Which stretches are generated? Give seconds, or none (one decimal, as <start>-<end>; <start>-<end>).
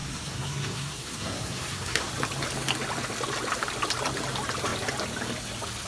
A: 0.0-2.1